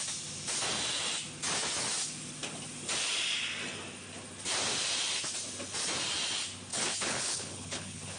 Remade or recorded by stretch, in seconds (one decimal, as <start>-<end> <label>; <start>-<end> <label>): 0.0-6.7 recorded; 6.7-8.2 remade